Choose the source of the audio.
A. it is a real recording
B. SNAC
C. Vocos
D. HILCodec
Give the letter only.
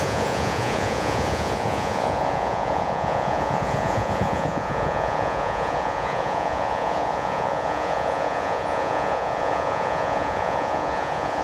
C